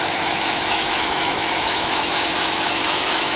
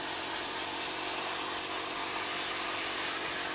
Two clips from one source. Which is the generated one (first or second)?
first